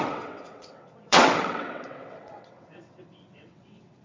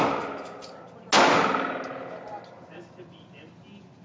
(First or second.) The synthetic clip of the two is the first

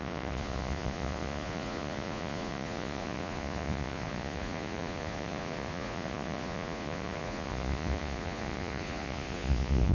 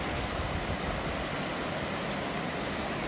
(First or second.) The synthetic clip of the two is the first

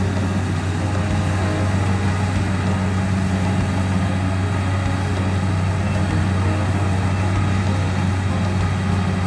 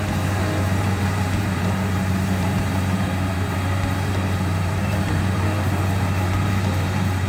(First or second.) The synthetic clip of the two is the second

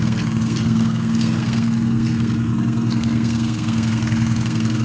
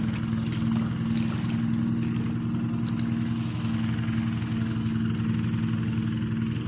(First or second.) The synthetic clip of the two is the first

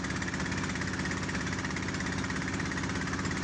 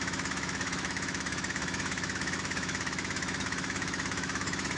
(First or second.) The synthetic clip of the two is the second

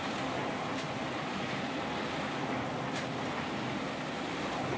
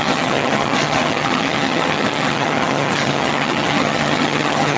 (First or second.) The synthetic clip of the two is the second